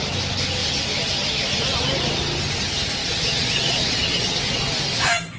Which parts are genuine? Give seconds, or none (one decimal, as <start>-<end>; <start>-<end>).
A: 0.0-3.0; 4.7-5.4